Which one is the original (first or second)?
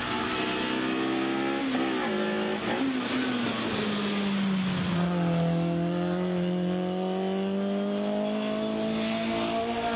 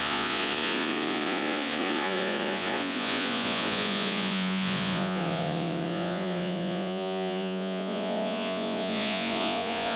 first